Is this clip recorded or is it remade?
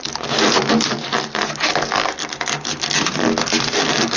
remade